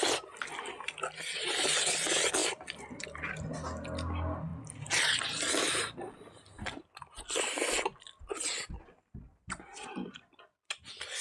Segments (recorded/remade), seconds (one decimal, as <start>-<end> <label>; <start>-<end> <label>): 0.0-11.2 recorded